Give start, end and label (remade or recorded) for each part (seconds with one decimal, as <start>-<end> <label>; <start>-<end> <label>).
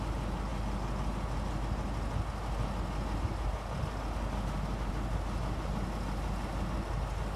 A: 0.0-7.4 recorded